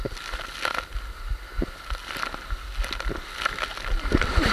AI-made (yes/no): no